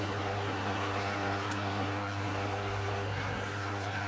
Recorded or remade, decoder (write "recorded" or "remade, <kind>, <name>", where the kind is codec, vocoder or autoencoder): remade, codec, SNAC